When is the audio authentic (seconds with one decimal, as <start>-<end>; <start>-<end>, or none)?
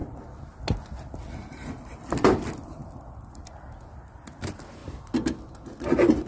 0.6-2.8; 3.7-6.3